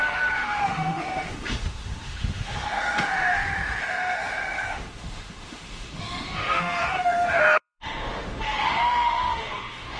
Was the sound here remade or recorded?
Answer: remade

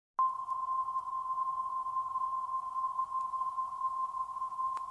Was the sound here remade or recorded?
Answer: recorded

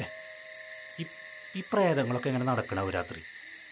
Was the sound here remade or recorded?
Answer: recorded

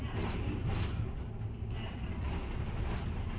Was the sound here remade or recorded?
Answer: recorded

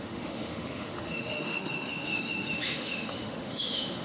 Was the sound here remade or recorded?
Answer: remade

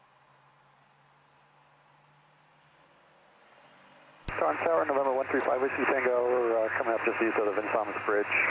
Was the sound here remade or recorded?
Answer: recorded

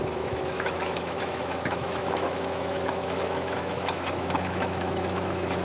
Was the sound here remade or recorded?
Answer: remade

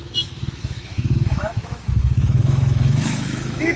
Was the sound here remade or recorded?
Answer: remade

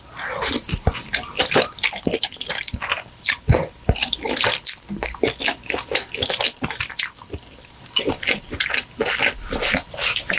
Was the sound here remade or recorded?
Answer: recorded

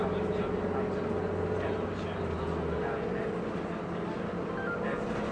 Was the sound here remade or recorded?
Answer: recorded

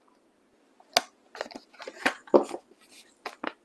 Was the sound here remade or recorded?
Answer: recorded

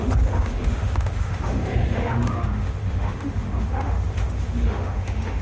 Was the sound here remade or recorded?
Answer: remade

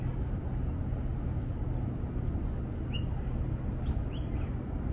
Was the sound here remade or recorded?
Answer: recorded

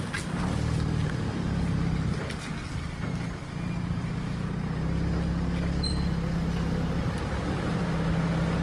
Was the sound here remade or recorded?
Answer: recorded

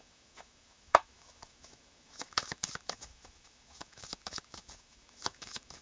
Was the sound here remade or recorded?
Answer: remade